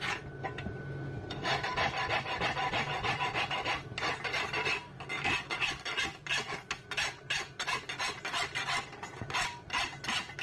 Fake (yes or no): no